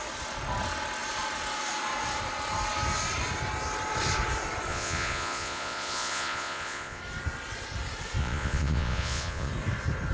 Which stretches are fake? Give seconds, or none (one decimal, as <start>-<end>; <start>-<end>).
4.7-7.0; 8.2-9.5